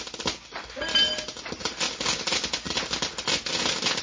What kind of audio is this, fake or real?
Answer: real